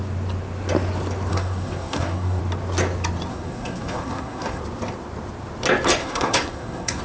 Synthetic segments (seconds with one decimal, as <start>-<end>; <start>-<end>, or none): 1.3-2.4; 3.3-4.6; 6.0-7.0